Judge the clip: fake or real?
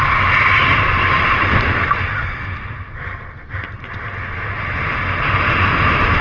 real